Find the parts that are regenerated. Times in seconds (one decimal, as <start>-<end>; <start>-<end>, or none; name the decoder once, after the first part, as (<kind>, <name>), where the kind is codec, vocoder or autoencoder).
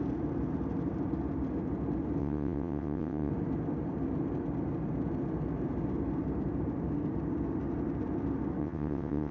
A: 2.2-3.3 (vocoder, WaveNeXt); 8.6-9.3